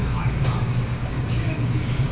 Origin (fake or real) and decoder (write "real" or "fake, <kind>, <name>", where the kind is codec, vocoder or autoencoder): fake, codec, DAC